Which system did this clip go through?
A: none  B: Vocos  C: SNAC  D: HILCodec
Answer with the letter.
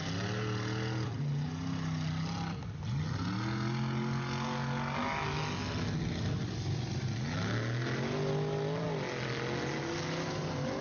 A